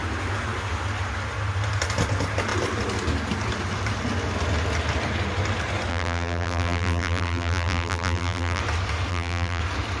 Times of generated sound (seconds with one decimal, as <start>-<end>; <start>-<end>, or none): 5.9-8.6; 9.1-9.6